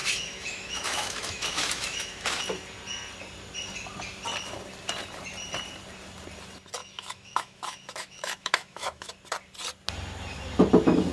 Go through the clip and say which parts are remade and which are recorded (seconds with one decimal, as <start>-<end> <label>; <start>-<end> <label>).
0.0-2.4 remade; 2.4-6.8 recorded; 6.8-9.1 remade; 9.1-11.1 recorded